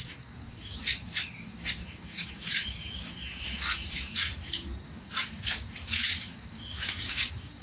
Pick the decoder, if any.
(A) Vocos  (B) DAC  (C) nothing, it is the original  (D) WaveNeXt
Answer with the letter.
B